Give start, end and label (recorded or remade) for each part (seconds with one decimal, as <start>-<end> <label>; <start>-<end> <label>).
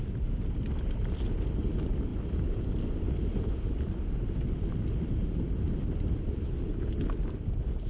0.0-7.9 recorded